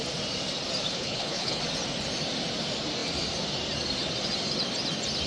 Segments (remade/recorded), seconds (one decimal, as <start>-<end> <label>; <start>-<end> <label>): 0.0-0.9 recorded; 0.9-1.6 remade; 1.6-5.3 recorded